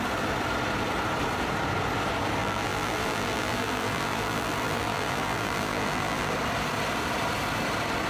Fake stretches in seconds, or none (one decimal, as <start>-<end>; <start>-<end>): 2.4-6.3